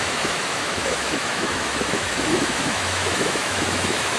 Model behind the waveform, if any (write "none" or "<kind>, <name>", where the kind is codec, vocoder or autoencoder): autoencoder, DAC-VAE